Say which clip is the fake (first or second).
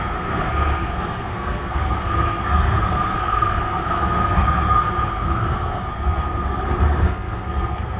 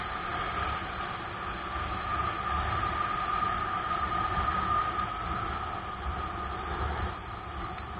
first